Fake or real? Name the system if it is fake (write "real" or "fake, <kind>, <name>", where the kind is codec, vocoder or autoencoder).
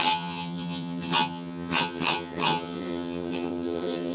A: fake, vocoder, HiFi-GAN